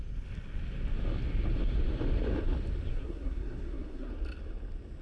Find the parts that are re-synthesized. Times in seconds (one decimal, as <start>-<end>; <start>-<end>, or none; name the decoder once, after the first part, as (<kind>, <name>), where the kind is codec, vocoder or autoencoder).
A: 2.9-4.1 (codec, SNAC)